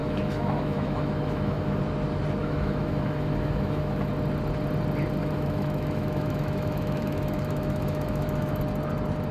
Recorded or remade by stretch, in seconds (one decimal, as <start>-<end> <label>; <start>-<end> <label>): 0.0-1.8 remade; 1.8-2.4 recorded; 2.4-4.1 remade; 4.1-5.2 recorded; 5.2-8.6 remade; 8.6-9.3 recorded